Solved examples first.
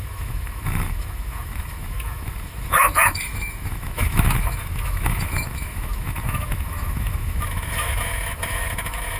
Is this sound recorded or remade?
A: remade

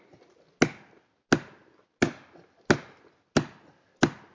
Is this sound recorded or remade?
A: recorded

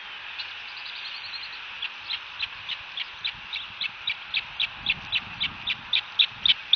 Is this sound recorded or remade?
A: recorded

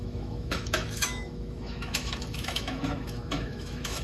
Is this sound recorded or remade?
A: remade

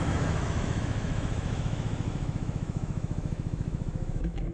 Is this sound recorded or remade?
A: remade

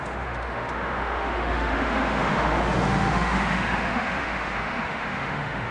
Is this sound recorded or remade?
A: remade